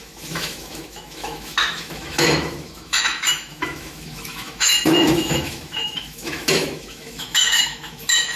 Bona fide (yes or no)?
no